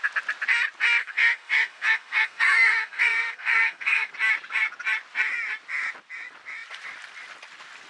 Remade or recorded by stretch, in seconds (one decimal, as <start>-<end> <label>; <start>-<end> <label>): 0.0-1.0 recorded; 1.0-4.1 remade; 4.1-7.9 recorded

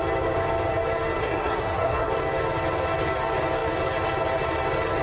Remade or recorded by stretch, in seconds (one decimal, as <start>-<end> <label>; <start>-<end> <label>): 0.0-1.2 recorded; 1.2-2.1 remade; 2.1-5.0 recorded

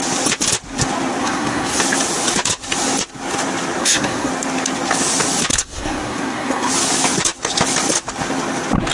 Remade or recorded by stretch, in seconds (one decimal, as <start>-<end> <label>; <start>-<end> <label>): 0.0-1.2 recorded; 1.2-1.8 remade; 1.8-3.8 recorded; 3.8-4.3 remade; 4.3-5.5 recorded; 5.5-6.7 remade; 6.7-8.9 recorded

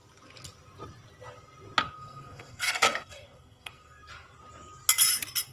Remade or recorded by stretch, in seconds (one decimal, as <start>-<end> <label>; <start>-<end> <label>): 0.0-1.8 recorded; 1.8-4.0 remade; 4.0-5.5 recorded

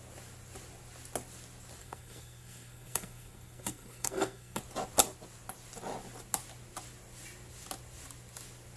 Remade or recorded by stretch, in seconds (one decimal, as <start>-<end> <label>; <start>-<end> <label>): 0.0-1.8 recorded; 1.8-4.6 remade; 4.6-8.8 recorded